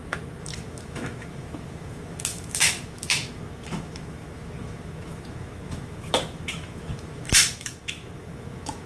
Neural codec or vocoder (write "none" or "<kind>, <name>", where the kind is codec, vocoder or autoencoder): autoencoder, DAC-VAE